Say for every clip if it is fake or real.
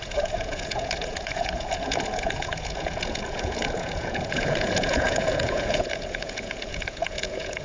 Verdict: fake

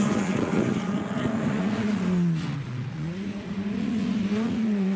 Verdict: fake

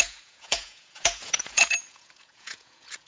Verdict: fake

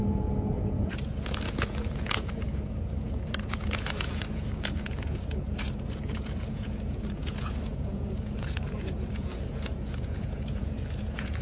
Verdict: fake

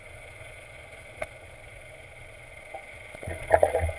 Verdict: fake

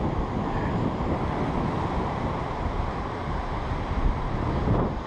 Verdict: real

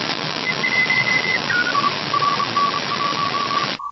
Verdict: fake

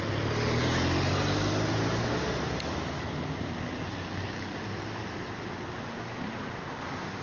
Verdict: real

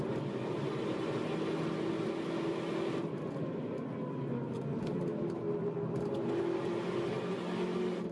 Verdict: real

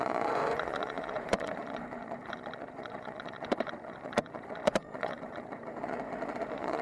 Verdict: fake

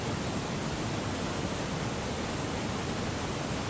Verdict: real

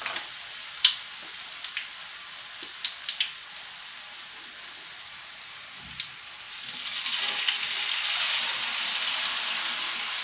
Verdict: real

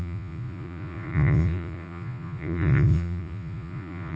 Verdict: fake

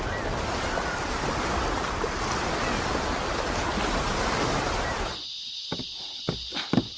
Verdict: real